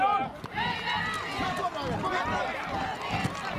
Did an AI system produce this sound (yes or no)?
no